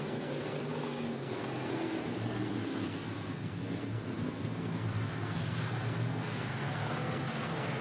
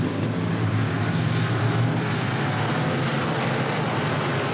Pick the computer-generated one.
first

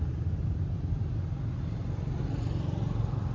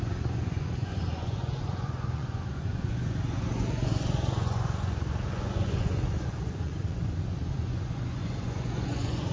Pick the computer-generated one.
second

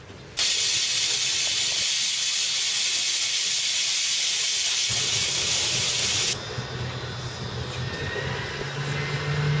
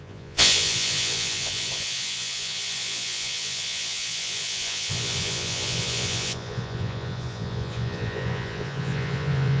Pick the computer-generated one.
second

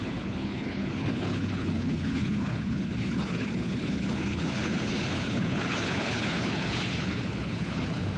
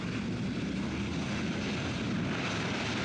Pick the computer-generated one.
first